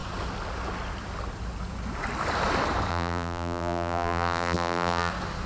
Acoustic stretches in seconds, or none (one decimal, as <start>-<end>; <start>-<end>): 0.0-2.9; 5.1-5.5